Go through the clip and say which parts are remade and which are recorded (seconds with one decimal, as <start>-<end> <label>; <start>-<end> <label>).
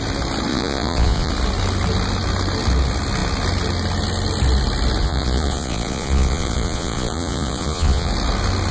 0.0-0.5 recorded; 0.5-1.3 remade; 1.3-5.0 recorded; 5.0-8.1 remade; 8.1-8.7 recorded